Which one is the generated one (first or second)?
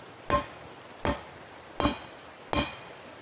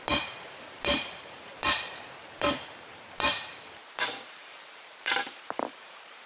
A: second